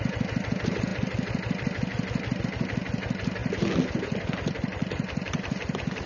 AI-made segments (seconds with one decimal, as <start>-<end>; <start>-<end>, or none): 0.0-3.4; 3.9-6.1